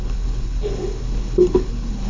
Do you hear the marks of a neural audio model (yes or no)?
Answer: yes